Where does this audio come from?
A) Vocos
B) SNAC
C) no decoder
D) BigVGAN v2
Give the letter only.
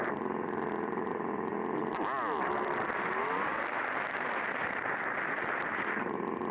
D